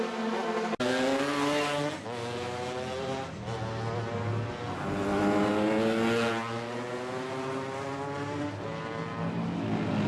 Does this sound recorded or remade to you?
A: recorded